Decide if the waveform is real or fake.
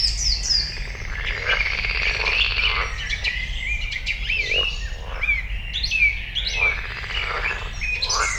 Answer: real